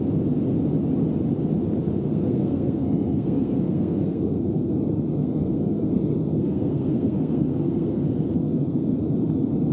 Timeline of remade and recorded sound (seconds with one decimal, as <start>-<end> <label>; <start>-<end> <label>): 0.0-2.1 recorded; 2.1-4.8 remade; 4.8-5.2 recorded; 5.2-8.0 remade; 8.0-8.4 recorded; 8.4-9.0 remade; 9.0-9.7 recorded